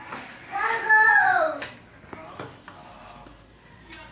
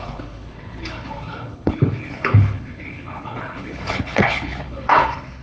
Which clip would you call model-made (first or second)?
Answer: second